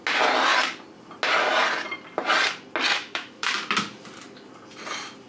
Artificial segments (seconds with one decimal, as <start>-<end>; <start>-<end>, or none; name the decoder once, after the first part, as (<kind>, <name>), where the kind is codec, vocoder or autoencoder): 2.9-3.5 (autoencoder, DAC-VAE)